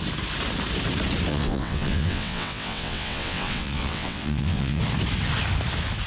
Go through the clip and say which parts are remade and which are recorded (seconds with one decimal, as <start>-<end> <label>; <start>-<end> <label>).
0.0-1.3 recorded; 1.3-4.8 remade; 4.8-6.1 recorded